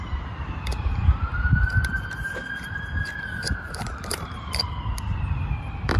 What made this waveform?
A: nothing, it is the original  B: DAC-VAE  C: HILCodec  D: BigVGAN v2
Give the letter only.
D